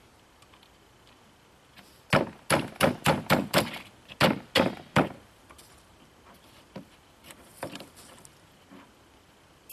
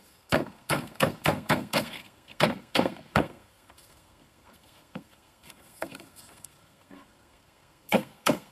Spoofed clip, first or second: second